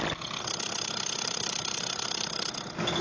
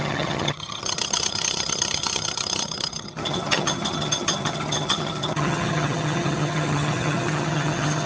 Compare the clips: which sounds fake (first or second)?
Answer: second